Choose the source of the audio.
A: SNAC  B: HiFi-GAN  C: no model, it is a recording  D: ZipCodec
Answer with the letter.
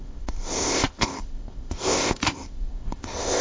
D